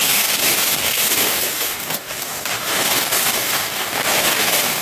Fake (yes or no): yes